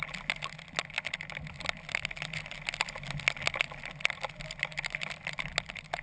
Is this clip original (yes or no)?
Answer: yes